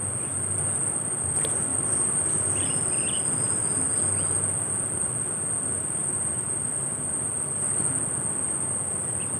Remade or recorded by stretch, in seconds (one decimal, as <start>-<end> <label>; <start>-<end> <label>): 0.0-1.7 recorded; 1.7-2.3 remade; 2.3-9.4 recorded